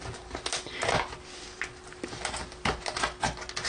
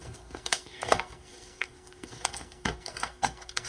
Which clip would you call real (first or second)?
first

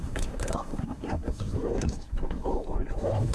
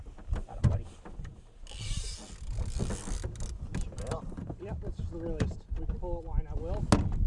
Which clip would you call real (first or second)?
second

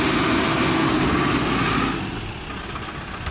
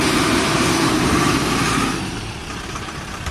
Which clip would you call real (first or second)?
first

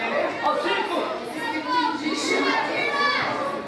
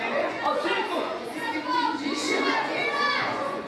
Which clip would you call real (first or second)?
first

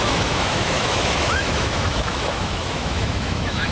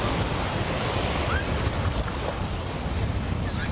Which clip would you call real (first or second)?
second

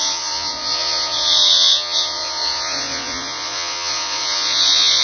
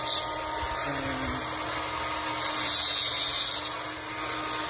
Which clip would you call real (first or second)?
second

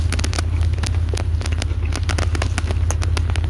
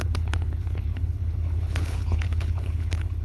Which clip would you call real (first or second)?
first